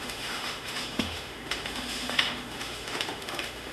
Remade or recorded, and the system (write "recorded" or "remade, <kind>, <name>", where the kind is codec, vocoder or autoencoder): remade, autoencoder, DAC-VAE